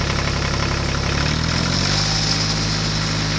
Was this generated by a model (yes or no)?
no